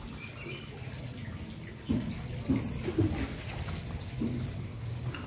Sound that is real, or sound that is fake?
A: real